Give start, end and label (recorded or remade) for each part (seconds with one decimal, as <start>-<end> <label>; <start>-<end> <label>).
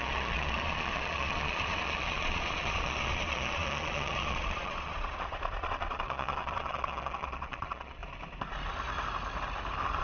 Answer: 0.0-8.0 remade; 8.0-10.0 recorded